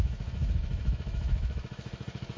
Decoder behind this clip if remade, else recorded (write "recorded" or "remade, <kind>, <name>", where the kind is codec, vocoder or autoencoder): remade, autoencoder, DAC-VAE